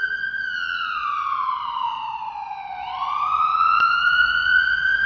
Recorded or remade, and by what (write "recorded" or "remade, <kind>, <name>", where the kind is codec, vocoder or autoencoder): remade, vocoder, Vocos